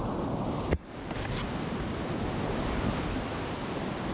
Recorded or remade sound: recorded